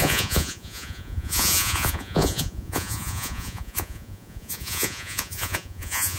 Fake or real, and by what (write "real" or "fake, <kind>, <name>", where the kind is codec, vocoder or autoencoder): fake, vocoder, Vocos